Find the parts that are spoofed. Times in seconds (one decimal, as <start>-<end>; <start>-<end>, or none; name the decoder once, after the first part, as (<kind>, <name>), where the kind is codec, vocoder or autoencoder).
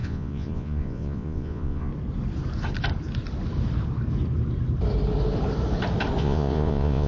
0.0-1.9 (vocoder, Vocos); 6.2-7.1